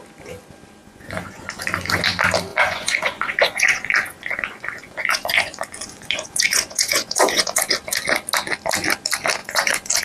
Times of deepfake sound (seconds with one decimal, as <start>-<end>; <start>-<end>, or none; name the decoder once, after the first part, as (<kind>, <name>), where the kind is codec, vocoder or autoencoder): 0.8-2.0 (vocoder, Vocos); 2.5-7.7; 9.4-10.0